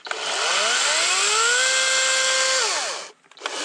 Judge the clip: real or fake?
real